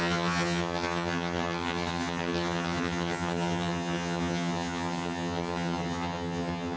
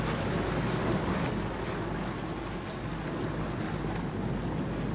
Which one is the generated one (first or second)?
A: first